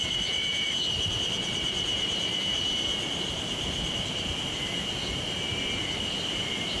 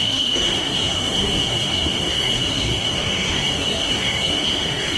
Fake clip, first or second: second